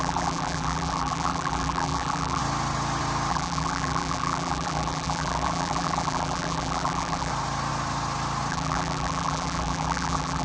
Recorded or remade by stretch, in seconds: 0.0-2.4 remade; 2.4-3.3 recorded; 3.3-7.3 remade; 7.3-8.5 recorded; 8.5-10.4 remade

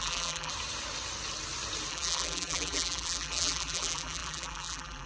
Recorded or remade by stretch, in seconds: 0.0-0.5 remade; 0.5-1.9 recorded; 1.9-5.1 remade

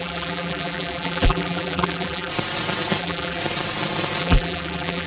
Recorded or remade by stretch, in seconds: 0.0-2.3 remade; 2.3-3.0 recorded; 3.0-3.4 remade; 3.4-4.2 recorded; 4.2-5.1 remade

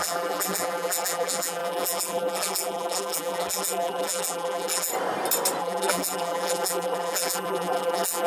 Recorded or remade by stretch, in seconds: 0.0-4.9 remade; 4.9-5.6 recorded; 5.6-8.3 remade

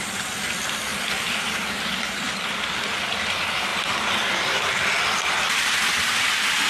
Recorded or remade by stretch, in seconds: 0.0-0.9 recorded; 0.9-3.3 remade; 3.3-6.7 recorded